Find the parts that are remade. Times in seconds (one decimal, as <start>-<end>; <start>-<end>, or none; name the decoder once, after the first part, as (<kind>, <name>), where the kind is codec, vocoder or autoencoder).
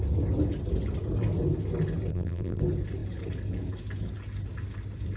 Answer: 2.1-2.6 (vocoder, BigVGAN v2)